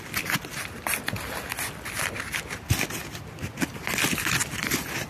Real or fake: real